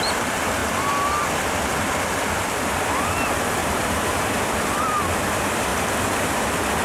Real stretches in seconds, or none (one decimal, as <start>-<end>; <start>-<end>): 0.0-3.6; 4.4-6.8